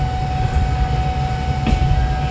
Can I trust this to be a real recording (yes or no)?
yes